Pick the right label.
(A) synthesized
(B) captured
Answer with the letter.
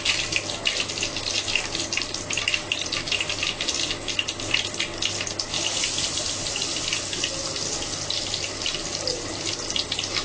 B